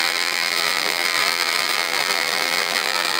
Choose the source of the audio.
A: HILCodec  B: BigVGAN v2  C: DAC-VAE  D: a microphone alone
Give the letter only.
B